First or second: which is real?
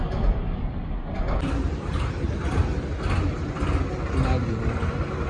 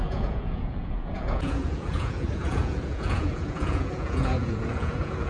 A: first